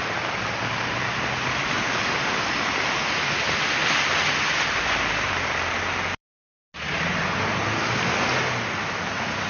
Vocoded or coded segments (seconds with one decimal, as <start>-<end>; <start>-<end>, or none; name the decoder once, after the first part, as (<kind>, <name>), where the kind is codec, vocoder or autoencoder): none